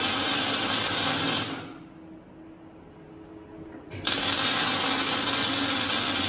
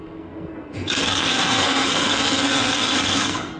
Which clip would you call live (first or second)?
first